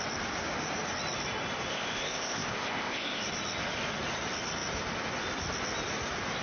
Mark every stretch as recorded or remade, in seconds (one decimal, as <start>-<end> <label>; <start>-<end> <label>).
0.0-1.7 recorded; 1.7-3.2 remade; 3.2-6.4 recorded